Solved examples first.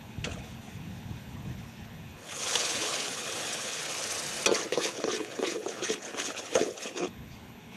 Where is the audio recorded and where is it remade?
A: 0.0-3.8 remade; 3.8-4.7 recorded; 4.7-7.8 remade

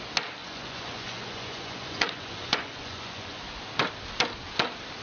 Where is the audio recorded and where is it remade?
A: 0.0-0.4 recorded; 0.4-3.4 remade; 3.4-5.0 recorded